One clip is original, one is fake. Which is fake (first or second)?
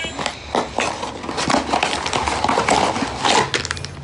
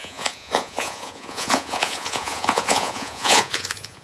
second